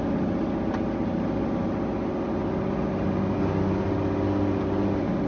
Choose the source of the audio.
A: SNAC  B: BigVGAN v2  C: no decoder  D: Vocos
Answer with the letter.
C